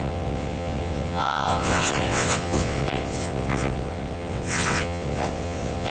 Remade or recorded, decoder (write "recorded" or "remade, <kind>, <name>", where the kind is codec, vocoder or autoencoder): remade, vocoder, WaveNeXt